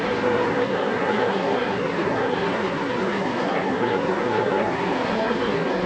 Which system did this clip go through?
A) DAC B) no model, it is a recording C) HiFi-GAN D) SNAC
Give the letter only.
D